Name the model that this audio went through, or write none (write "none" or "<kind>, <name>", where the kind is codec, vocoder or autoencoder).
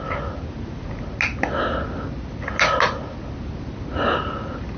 none